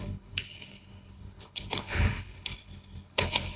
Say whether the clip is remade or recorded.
remade